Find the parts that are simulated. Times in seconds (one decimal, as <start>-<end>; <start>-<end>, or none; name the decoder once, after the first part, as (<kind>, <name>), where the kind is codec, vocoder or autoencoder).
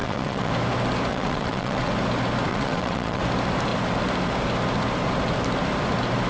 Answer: 0.0-0.5 (vocoder, WaveNeXt); 1.1-1.9; 2.5-3.2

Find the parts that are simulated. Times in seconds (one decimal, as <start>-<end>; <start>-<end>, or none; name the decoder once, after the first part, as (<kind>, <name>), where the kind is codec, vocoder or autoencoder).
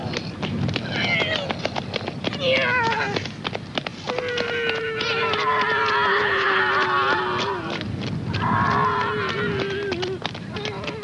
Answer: 6.1-6.6 (codec, HILCodec)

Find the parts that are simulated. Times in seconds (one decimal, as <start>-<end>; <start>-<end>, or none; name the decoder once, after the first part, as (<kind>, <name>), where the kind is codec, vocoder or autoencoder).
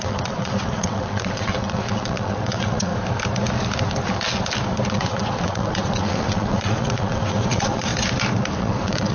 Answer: 0.0-2.9 (vocoder, WaveNeXt); 4.9-7.9; 8.6-9.1